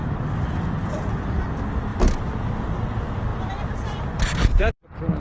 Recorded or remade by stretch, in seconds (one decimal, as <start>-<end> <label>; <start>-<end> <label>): 0.0-0.9 remade; 0.9-1.9 recorded; 1.9-2.6 remade; 2.6-3.3 recorded; 3.3-4.7 remade; 4.7-5.2 recorded